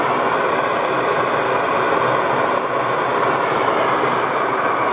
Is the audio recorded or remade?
recorded